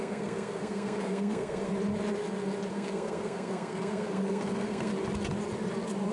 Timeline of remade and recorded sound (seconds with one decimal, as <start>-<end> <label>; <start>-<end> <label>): 0.0-1.7 remade; 1.7-2.7 recorded; 2.7-4.9 remade; 4.9-6.1 recorded